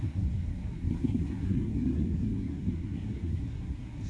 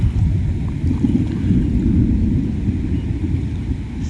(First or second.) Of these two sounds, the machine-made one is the first